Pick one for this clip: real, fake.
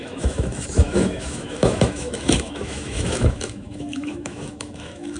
fake